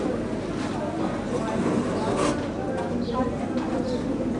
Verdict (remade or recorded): recorded